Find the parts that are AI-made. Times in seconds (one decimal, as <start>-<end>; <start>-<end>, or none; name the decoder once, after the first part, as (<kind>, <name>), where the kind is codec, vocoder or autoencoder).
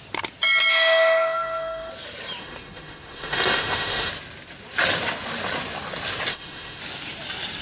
0.7-1.9 (autoencoder, DAC-VAE); 2.4-4.1; 6.3-6.8